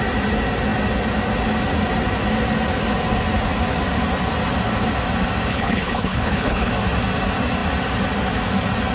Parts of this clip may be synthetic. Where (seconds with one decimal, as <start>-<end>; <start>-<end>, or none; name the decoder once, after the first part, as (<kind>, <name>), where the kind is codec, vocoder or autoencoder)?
5.5-6.7 (codec, HILCodec)